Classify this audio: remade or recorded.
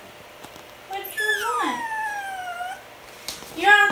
recorded